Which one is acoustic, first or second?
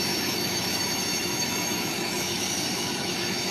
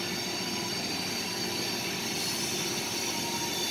second